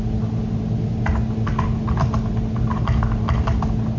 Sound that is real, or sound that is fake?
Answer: real